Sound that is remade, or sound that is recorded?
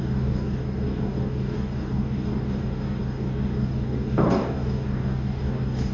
remade